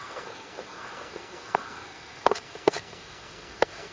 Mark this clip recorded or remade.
remade